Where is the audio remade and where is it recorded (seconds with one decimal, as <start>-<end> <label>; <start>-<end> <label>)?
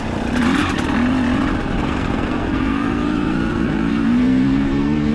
0.0-1.8 recorded; 1.8-5.1 remade